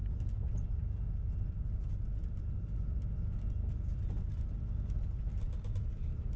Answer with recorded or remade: recorded